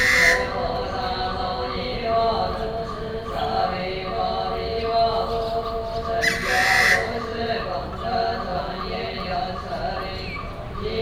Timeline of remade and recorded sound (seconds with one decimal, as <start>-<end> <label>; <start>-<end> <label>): 0.0-8.5 recorded; 8.5-9.4 remade; 9.4-11.0 recorded